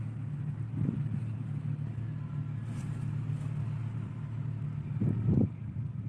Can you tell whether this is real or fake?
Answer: real